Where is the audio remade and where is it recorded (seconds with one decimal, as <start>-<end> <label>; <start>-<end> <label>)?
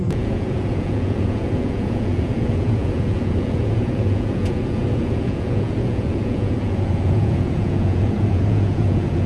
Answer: 0.0-9.3 remade